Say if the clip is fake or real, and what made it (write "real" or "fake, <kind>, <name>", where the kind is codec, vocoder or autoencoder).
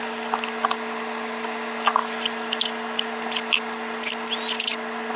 real